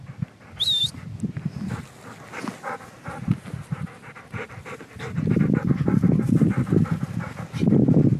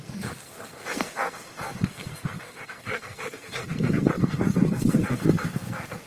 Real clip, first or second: first